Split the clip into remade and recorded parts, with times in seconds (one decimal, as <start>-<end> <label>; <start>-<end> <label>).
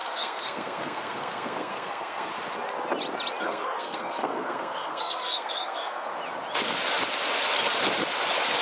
0.0-2.3 remade; 2.3-3.4 recorded; 3.4-6.1 remade; 6.1-8.6 recorded